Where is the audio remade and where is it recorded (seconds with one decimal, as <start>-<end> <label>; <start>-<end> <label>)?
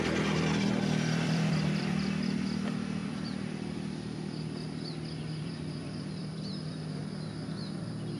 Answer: 0.0-3.0 remade; 3.0-5.4 recorded; 5.4-7.0 remade; 7.0-8.2 recorded